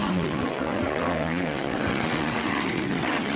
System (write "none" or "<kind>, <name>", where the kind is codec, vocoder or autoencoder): vocoder, WaveNeXt